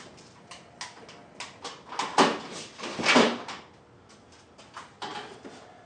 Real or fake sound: real